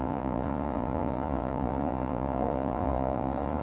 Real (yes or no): no